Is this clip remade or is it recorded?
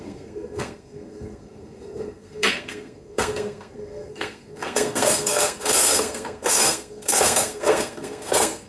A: remade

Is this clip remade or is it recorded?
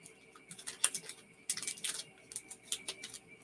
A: recorded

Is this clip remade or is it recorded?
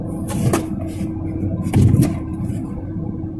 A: recorded